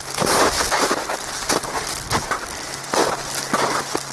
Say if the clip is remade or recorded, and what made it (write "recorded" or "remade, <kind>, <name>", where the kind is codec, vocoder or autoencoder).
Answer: recorded